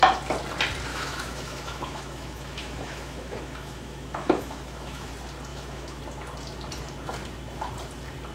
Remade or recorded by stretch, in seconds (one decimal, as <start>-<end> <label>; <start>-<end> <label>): 0.0-0.9 recorded; 0.9-5.1 remade; 5.1-5.5 recorded; 5.5-6.0 remade; 6.0-8.3 recorded